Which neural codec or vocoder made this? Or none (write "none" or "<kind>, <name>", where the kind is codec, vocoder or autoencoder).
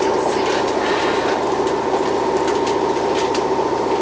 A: none